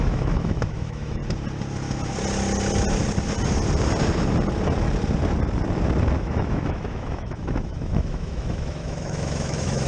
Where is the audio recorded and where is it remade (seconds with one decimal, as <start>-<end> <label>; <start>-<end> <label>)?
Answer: 0.0-1.2 remade; 1.2-6.2 recorded; 6.2-9.9 remade